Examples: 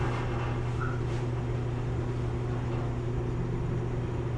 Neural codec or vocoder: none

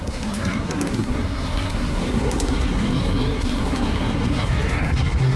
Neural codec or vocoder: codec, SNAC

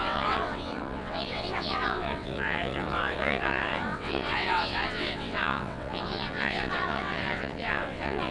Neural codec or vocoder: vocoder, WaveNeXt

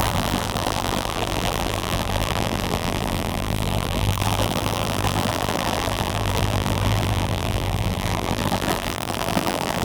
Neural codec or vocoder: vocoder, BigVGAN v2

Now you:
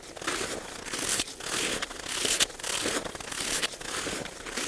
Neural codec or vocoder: none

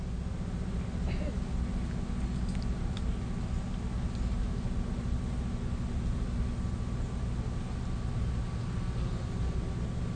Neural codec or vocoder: none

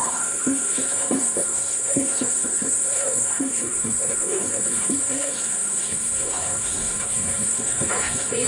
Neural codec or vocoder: codec, SNAC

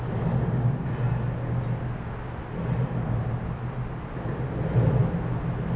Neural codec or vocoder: none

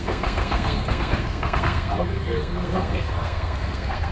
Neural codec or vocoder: codec, SNAC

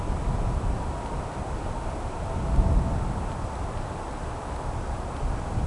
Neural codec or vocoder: none